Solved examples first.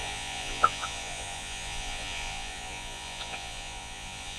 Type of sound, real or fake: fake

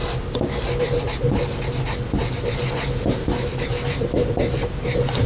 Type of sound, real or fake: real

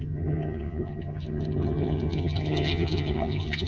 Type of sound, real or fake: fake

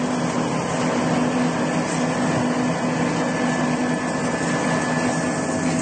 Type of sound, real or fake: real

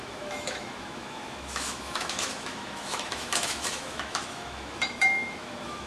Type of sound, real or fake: fake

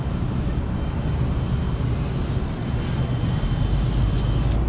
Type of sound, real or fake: real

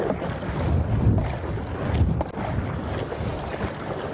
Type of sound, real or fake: real